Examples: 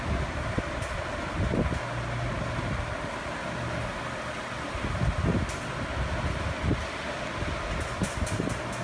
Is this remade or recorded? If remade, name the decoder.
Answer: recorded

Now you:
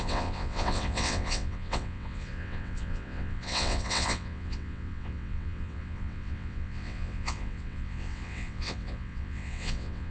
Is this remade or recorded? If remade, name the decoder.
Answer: remade, vocoder, WaveNeXt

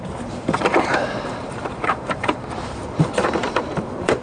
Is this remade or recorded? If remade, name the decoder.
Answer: remade, vocoder, BigVGAN v2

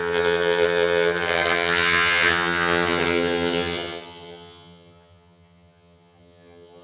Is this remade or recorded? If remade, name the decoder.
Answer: remade, vocoder, HiFi-GAN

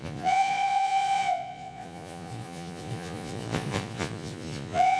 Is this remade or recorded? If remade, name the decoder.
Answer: remade, vocoder, Vocos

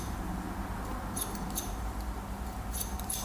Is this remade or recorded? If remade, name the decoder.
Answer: recorded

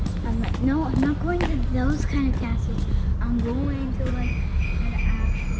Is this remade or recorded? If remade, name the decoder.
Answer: recorded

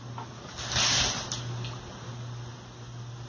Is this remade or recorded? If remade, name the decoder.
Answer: recorded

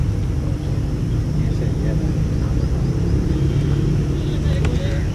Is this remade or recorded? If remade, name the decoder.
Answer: recorded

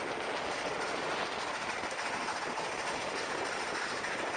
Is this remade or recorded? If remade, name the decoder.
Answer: recorded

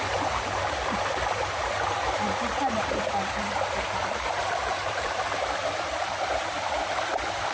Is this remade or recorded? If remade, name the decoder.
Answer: remade, vocoder, BigVGAN v2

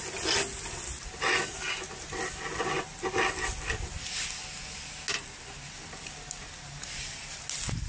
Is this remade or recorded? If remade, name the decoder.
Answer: recorded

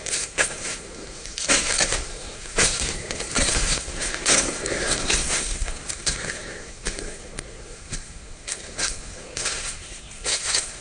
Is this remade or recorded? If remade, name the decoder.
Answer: remade, codec, SNAC